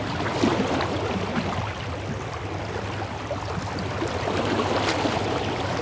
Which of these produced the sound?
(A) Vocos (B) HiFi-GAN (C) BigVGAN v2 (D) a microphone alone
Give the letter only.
D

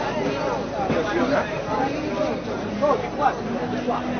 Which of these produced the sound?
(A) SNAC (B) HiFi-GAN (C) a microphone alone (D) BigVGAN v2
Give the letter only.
C